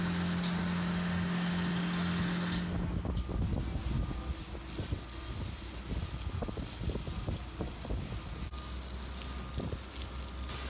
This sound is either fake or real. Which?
real